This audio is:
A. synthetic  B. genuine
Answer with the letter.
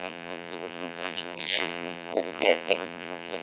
A